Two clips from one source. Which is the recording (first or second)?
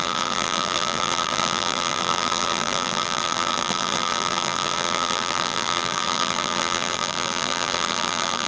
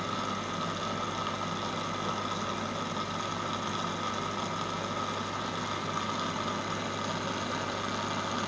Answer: second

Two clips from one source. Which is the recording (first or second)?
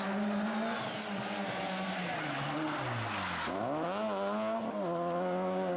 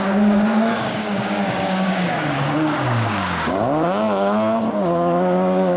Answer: first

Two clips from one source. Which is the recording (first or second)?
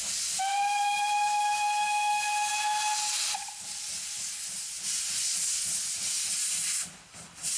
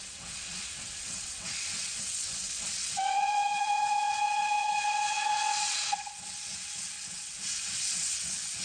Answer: first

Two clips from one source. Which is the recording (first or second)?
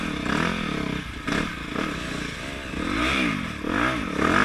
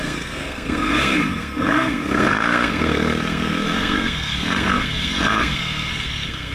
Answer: first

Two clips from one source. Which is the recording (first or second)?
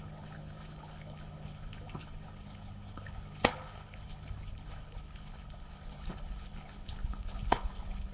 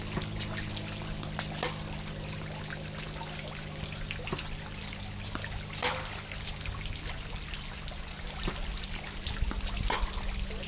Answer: second